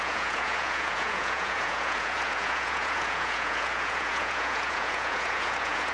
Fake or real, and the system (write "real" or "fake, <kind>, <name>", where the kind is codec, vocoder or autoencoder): fake, vocoder, Vocos